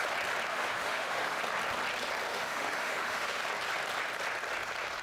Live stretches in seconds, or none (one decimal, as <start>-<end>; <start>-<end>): 0.0-0.5; 1.4-2.3; 3.4-5.0